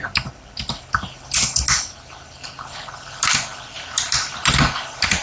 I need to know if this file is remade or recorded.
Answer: recorded